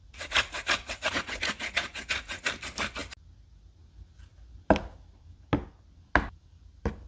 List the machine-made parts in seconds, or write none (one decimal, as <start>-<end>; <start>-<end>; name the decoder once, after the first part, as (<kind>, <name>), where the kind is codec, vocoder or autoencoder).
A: 0.0-2.5 (vocoder, Vocos)